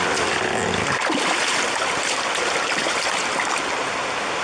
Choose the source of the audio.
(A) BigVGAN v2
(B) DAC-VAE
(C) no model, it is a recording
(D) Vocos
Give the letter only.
C